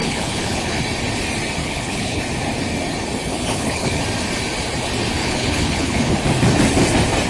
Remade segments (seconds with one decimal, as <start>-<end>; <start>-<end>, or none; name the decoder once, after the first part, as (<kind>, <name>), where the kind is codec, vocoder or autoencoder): 0.0-0.8 (codec, HILCodec); 1.6-2.2; 3.3-4.0; 5.2-6.1